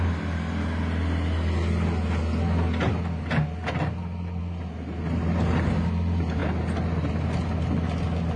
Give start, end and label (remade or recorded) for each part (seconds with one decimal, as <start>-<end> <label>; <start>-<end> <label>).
0.0-8.4 recorded